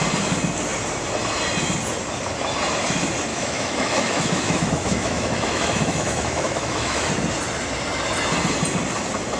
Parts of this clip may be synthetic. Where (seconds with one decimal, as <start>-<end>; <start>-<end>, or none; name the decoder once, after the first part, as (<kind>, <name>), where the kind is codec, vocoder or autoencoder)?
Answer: 3.3-7.1 (autoencoder, DAC-VAE)